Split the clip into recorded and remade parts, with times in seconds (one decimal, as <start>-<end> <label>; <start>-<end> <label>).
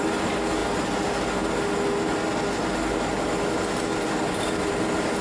0.0-5.2 recorded